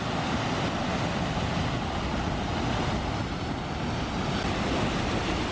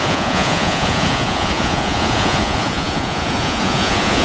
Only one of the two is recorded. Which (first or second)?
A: first